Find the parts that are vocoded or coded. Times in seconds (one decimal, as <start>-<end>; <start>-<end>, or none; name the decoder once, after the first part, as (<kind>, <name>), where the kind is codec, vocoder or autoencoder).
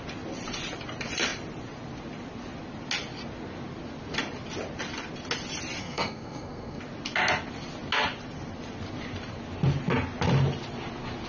5.8-6.8 (codec, SNAC)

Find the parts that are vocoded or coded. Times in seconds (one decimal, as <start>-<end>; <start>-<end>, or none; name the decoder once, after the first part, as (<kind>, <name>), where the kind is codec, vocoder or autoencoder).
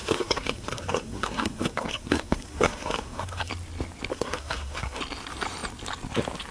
0.0-3.5 (codec, SNAC); 4.1-5.0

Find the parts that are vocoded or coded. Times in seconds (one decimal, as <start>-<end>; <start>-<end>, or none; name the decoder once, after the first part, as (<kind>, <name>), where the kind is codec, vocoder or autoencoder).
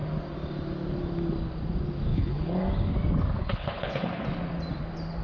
2.1-2.6 (codec, HILCodec); 3.4-4.2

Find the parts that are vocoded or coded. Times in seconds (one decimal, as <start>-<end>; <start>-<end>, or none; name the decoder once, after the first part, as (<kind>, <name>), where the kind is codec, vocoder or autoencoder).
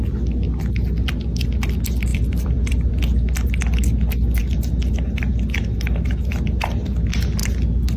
2.1-2.9 (vocoder, BigVGAN v2)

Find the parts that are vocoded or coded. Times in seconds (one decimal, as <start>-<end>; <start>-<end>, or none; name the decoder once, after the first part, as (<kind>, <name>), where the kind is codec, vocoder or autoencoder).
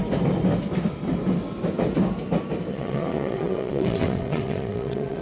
2.7-5.2 (vocoder, WaveNeXt)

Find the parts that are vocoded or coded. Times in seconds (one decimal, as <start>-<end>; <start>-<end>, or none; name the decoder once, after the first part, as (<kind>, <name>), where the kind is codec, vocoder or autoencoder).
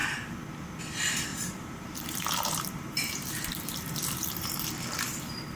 1.3-4.7 (vocoder, BigVGAN v2)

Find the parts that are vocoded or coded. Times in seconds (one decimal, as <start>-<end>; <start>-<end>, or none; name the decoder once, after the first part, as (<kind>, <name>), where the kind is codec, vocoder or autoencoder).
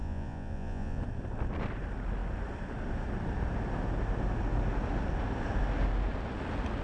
0.0-1.0 (vocoder, Vocos)